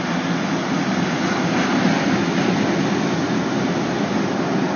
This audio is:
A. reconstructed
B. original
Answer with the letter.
B